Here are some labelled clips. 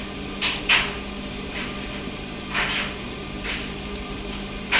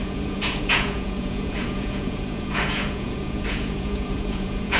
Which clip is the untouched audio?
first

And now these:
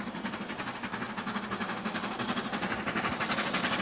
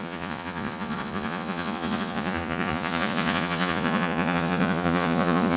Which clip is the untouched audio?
first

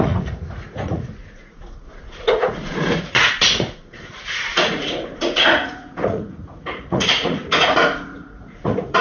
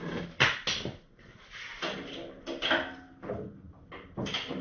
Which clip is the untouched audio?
second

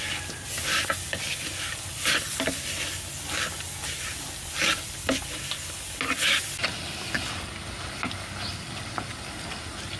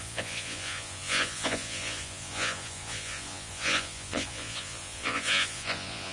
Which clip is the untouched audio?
first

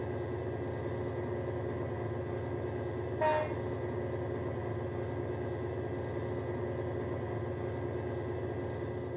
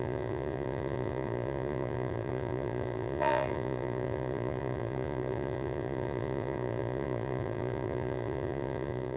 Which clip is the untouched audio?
first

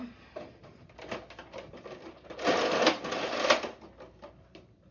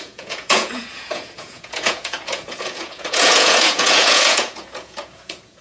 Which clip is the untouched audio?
first